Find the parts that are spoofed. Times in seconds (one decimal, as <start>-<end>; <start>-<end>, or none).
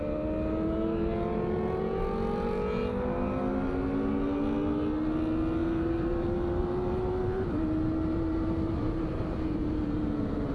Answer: 5.6-10.5